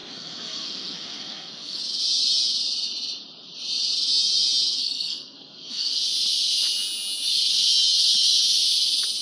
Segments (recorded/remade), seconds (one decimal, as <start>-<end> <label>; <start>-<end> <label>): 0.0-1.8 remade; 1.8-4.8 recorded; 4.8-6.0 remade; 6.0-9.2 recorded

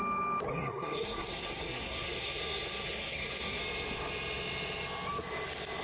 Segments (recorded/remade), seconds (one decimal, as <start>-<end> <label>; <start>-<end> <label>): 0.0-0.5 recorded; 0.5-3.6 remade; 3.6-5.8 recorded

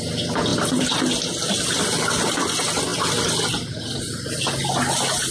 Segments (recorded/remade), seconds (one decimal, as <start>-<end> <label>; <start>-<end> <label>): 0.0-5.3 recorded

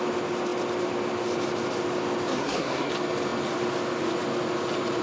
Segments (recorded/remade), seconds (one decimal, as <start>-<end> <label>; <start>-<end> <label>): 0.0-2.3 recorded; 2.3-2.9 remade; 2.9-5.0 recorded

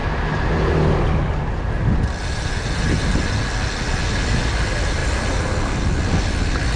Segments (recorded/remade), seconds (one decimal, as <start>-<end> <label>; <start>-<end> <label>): 0.0-6.8 recorded

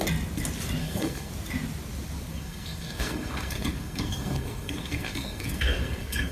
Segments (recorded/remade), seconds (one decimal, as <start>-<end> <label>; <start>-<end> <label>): 0.0-0.8 recorded; 0.8-1.3 remade; 1.3-2.3 recorded; 2.3-6.3 remade